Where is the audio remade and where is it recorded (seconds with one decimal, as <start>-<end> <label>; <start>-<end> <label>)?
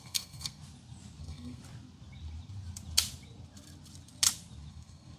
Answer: 0.0-0.6 remade; 0.6-1.2 recorded; 1.2-1.6 remade; 1.6-4.7 recorded; 4.7-5.2 remade